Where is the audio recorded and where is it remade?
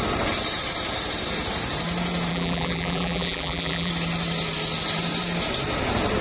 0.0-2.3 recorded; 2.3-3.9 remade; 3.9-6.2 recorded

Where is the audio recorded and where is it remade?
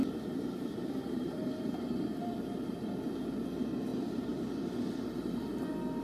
0.0-3.5 remade; 3.5-3.9 recorded; 3.9-4.4 remade; 4.4-6.0 recorded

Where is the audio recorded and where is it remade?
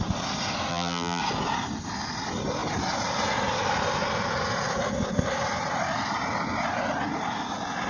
0.0-0.7 recorded; 0.7-1.2 remade; 1.2-7.9 recorded